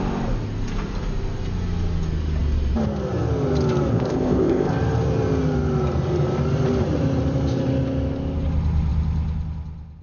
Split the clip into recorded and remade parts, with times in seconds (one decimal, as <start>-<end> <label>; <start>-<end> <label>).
0.0-3.9 recorded; 3.9-4.7 remade; 4.7-10.0 recorded